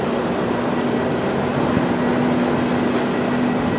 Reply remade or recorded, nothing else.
recorded